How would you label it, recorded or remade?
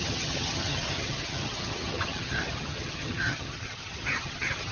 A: remade